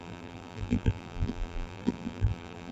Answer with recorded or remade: remade